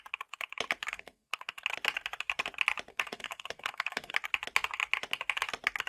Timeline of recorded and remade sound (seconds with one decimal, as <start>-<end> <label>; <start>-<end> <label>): 0.0-0.9 recorded; 0.9-1.6 remade; 1.6-2.9 recorded; 2.9-4.1 remade; 4.1-5.9 recorded